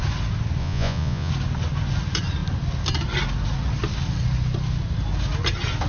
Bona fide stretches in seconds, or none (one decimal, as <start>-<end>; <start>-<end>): 0.0-0.6; 1.3-5.9